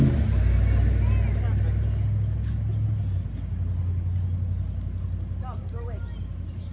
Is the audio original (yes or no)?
yes